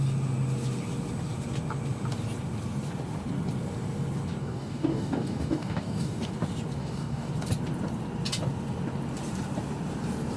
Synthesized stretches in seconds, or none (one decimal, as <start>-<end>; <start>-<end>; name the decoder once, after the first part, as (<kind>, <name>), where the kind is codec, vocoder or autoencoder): 4.4-6.3 (codec, DAC); 6.8-7.3